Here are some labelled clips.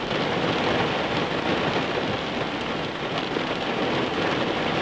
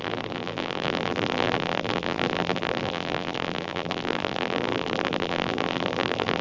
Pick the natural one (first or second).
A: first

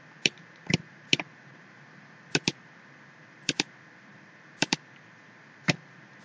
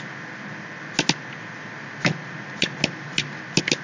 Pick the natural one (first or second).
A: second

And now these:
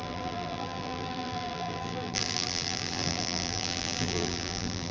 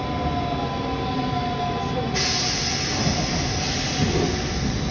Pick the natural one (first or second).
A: second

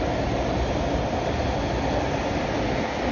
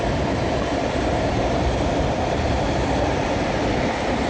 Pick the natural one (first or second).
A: first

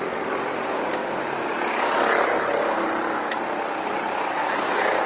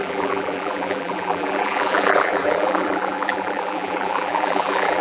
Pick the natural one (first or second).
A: first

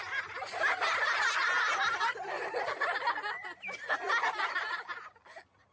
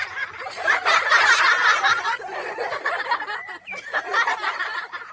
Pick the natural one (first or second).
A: first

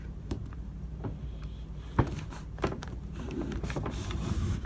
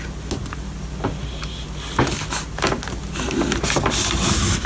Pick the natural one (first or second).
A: second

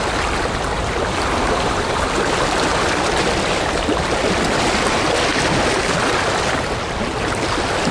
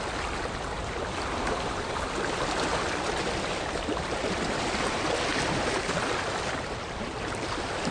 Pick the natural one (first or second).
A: first